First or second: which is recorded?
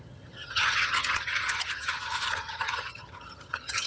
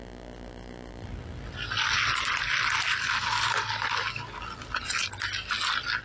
second